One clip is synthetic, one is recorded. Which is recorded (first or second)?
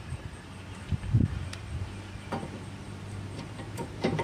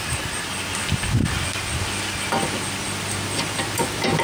second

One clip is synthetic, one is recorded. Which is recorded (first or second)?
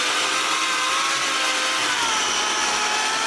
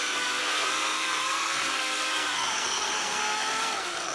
first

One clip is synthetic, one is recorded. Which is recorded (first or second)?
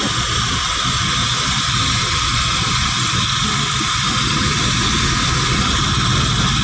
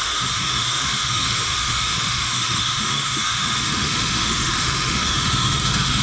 first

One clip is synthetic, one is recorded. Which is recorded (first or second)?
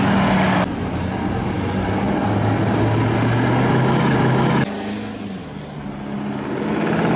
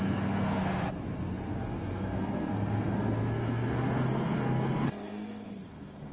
first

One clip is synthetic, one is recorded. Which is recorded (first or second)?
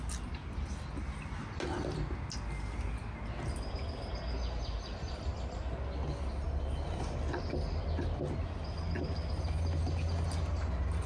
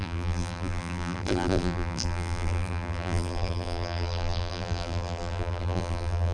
first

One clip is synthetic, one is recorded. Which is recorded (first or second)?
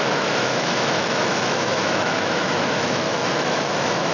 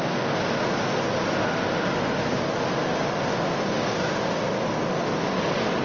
second